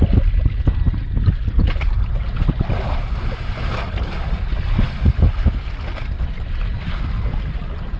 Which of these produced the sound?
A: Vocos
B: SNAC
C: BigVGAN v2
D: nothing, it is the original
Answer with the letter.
D